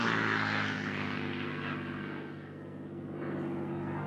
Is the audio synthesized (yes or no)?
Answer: yes